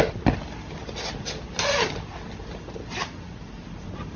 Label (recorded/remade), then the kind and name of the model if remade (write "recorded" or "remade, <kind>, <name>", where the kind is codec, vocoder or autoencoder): recorded